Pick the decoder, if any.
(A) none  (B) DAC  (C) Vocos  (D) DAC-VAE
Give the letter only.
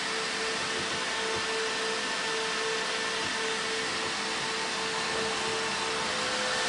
A